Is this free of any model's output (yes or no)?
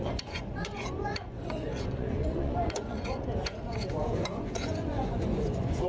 no